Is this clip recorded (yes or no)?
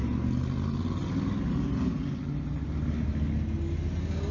yes